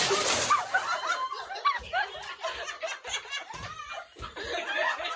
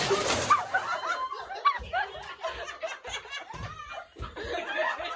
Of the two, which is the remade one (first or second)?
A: first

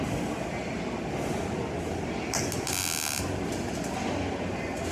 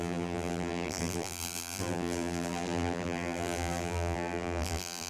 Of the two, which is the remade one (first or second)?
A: second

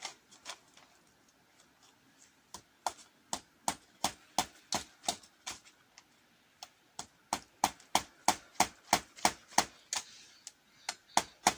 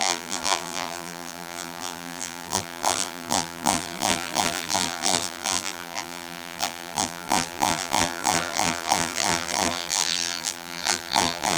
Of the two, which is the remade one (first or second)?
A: second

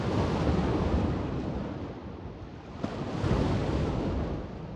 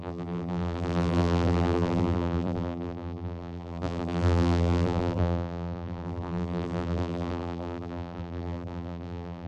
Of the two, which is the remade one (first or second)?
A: second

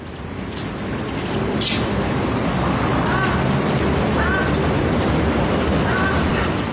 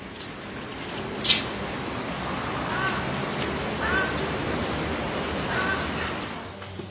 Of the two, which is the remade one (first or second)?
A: first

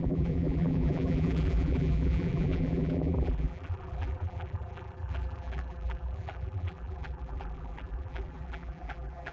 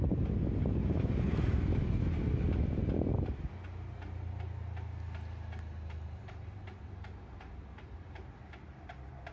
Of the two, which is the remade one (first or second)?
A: first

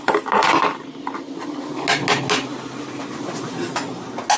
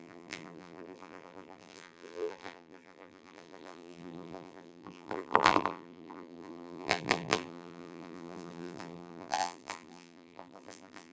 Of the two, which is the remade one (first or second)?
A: second